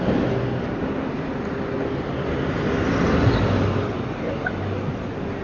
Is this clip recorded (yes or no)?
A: yes